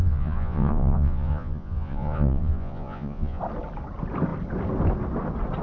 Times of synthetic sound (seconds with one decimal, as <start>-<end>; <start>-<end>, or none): 0.0-3.4